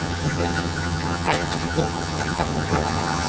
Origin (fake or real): fake